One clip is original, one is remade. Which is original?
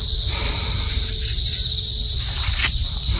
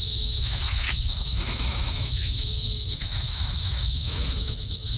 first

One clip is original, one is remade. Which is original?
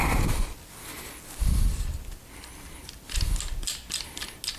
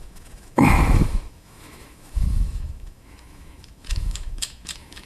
first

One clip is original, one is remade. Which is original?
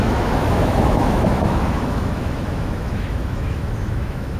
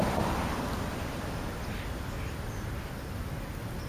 second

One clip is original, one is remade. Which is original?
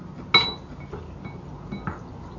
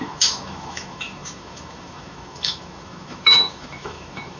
first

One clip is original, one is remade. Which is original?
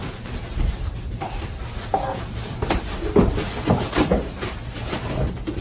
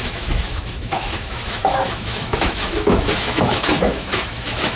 first